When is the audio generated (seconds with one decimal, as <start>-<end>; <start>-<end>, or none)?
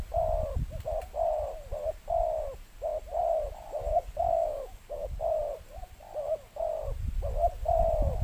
3.9-5.2